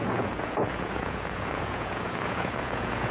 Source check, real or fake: fake